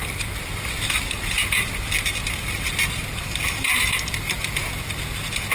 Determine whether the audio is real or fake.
real